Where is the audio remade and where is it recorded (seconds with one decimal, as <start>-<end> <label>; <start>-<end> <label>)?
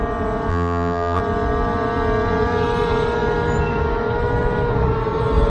0.0-0.5 recorded; 0.5-1.2 remade; 1.2-5.5 recorded